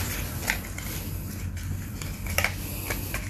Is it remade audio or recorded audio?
recorded